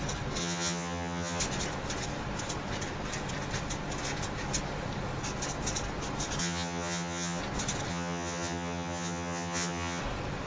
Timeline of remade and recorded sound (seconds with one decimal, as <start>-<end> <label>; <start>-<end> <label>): 0.0-0.4 recorded; 0.4-1.4 remade; 1.4-6.4 recorded; 6.4-7.4 remade; 7.4-7.9 recorded; 7.9-10.0 remade; 10.0-10.5 recorded